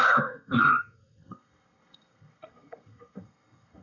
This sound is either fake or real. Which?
fake